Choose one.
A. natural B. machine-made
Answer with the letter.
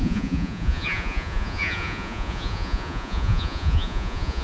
B